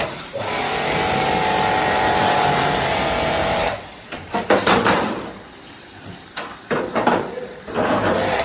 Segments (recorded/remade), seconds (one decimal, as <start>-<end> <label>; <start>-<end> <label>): 0.0-8.4 remade